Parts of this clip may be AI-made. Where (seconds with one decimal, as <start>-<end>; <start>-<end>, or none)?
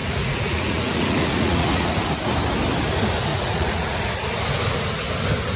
0.0-2.2; 3.3-4.0